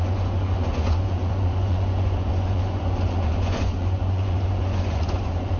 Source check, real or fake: fake